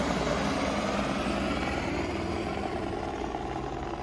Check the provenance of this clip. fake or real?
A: real